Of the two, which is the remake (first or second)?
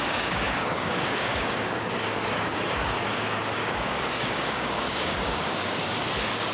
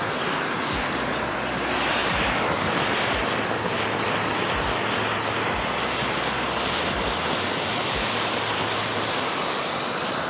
first